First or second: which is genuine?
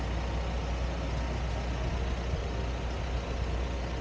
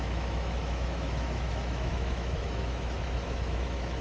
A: first